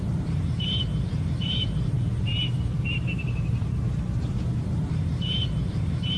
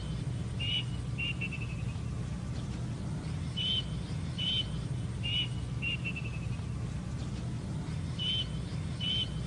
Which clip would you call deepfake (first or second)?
first